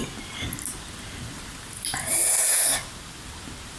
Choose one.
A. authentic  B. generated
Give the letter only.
A